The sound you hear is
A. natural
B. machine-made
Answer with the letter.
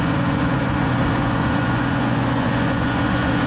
B